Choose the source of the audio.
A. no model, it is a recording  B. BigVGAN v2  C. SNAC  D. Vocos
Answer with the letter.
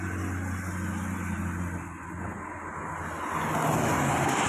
A